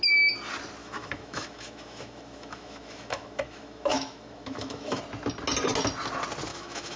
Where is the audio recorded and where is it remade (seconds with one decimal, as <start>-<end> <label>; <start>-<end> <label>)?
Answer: 0.0-0.8 recorded; 0.8-5.0 remade; 5.0-6.5 recorded; 6.5-7.0 remade